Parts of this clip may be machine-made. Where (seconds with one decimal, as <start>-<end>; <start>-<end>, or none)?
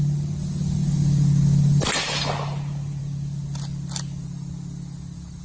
none